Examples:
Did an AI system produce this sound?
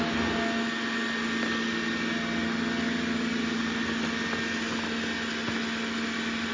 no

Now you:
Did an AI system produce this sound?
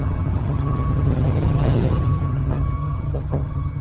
yes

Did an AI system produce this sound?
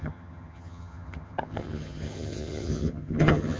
yes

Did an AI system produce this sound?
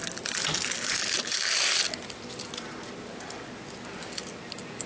no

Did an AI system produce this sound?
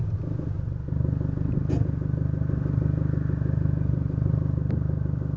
no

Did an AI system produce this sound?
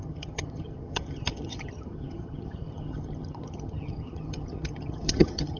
yes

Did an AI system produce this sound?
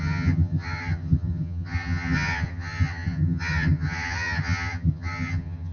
yes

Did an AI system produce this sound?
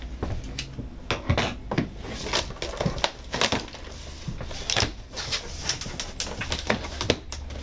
no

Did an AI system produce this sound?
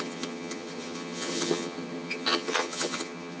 yes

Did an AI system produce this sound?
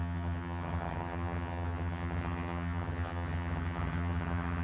yes